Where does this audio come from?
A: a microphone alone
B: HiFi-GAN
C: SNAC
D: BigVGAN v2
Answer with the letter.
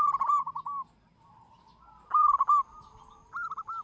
A